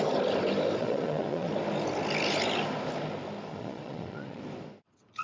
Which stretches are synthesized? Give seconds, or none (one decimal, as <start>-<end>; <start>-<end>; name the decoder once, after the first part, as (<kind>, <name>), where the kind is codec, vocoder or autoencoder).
0.8-1.5 (vocoder, Vocos); 3.5-4.4